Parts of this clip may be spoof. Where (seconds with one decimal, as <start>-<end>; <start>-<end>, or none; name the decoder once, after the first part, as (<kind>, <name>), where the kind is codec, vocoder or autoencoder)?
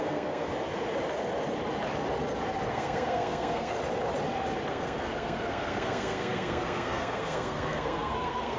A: 0.0-0.5 (codec, SNAC); 2.7-3.7; 4.7-8.6